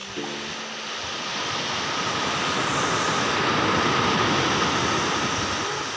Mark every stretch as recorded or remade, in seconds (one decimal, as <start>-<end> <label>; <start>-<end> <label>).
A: 0.0-6.0 recorded